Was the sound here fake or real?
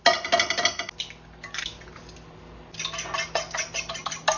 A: real